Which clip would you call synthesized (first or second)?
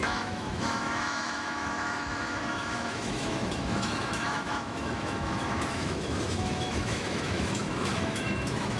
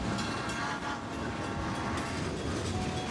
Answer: first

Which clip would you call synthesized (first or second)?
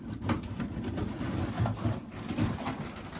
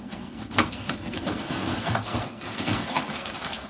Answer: second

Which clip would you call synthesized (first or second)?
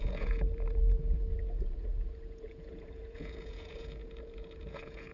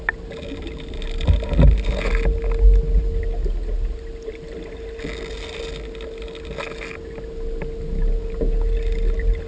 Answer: first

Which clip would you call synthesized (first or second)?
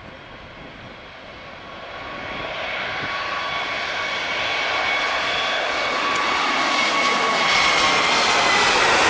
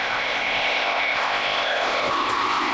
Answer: second